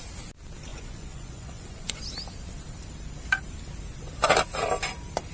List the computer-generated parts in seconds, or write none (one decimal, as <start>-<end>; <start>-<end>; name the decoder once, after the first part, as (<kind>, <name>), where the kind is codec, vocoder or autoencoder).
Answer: 0.7-2.0 (vocoder, Vocos)